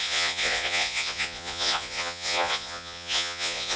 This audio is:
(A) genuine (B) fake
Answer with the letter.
B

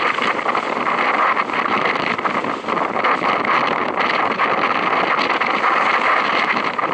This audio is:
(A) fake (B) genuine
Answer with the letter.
B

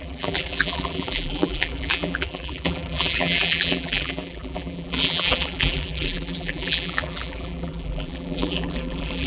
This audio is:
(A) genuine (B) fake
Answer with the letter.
B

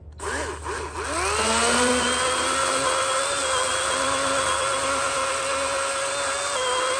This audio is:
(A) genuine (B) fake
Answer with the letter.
A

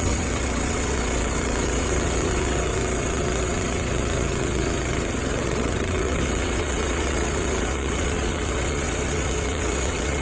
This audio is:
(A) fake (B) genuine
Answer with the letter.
A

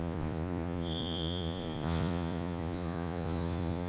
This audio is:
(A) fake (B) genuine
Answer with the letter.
A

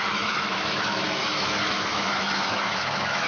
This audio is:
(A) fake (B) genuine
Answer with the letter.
A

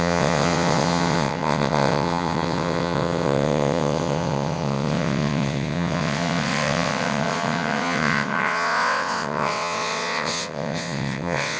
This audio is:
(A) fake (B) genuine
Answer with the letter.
A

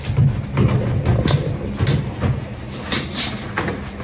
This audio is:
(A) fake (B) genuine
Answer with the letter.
B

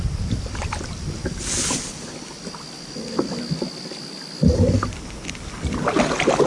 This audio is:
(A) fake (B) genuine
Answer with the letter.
B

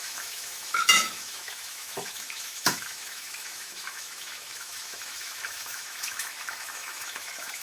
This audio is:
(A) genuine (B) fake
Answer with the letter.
B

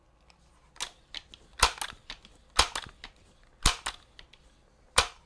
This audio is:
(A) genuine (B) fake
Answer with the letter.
A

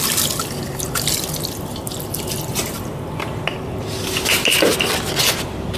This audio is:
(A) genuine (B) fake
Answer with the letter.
A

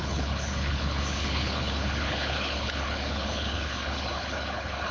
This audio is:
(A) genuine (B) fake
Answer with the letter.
B